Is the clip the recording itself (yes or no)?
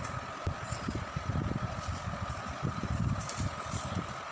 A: no